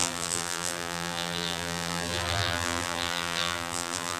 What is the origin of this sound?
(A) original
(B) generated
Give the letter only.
B